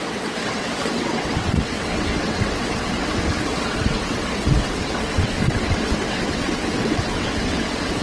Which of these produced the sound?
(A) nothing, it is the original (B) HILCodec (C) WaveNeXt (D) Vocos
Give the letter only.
C